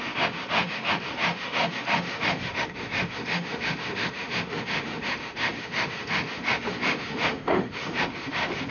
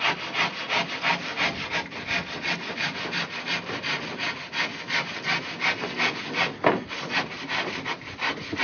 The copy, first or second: first